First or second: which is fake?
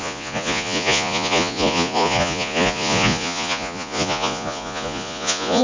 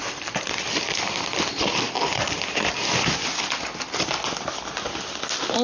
first